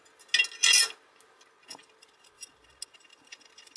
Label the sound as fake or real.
real